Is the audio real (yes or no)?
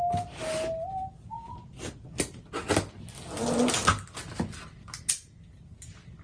yes